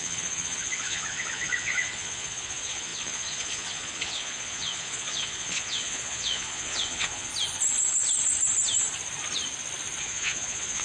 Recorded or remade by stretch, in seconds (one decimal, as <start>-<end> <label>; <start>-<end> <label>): 0.0-7.3 remade; 7.3-10.0 recorded; 10.0-10.8 remade